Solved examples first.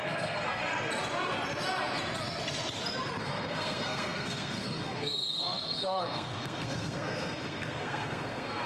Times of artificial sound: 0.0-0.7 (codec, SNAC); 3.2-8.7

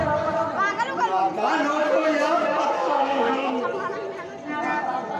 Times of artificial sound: 2.8-3.5 (codec, SNAC)

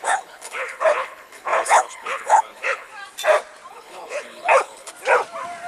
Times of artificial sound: 0.0-2.9 (codec, HILCodec); 3.7-4.9

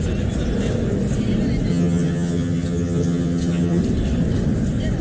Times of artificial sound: 1.7-3.8 (vocoder, HiFi-GAN)

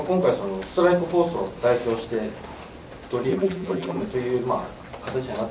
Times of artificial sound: 3.3-4.0 (vocoder, BigVGAN v2)

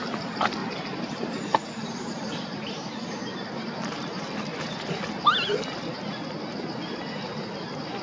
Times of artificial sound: 0.6-5.1 (vocoder, BigVGAN v2)

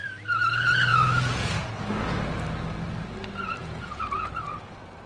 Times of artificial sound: 0.9-1.7 (vocoder, Vocos); 3.6-4.3